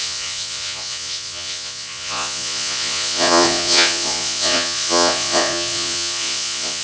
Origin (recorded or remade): remade